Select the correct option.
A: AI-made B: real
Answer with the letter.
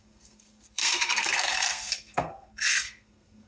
A